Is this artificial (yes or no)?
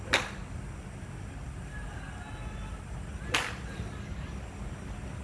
no